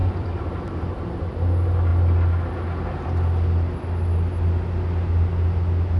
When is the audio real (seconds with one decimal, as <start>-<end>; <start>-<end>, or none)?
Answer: 1.2-6.0